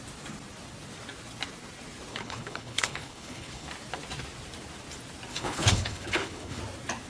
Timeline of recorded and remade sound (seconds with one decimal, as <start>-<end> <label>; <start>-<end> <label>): 0.0-2.1 recorded; 2.1-3.7 remade; 3.7-5.3 recorded; 5.3-6.6 remade; 6.6-7.1 recorded